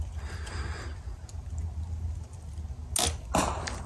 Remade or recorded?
recorded